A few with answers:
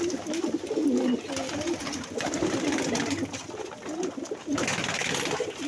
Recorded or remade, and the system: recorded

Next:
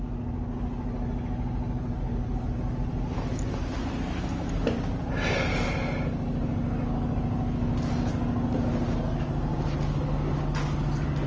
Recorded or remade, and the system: recorded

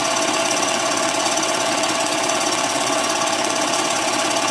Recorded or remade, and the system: remade, vocoder, WaveNeXt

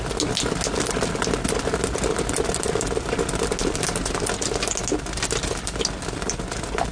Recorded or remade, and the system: recorded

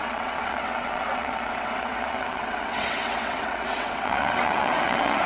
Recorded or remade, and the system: remade, vocoder, WaveNeXt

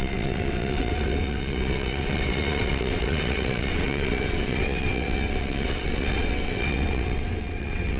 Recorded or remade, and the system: remade, vocoder, WaveNeXt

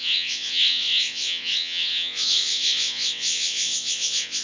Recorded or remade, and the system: remade, vocoder, WaveNeXt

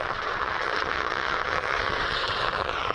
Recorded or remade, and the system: remade, vocoder, WaveNeXt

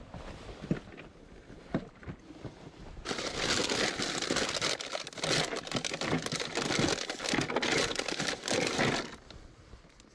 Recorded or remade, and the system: recorded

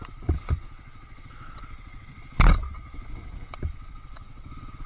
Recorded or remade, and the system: remade, vocoder, WaveNeXt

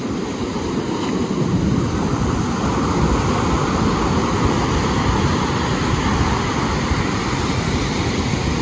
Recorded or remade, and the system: recorded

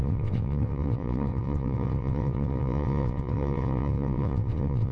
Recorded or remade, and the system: remade, vocoder, WaveNeXt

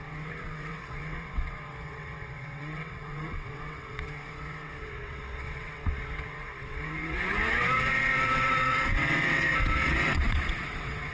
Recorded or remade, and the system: remade, vocoder, WaveNeXt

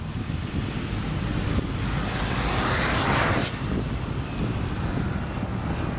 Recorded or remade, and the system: recorded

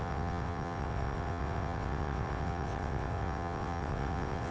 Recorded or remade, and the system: remade, vocoder, WaveNeXt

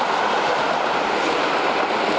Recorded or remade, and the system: recorded